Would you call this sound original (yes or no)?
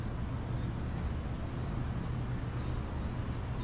yes